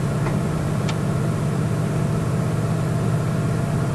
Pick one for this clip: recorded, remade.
recorded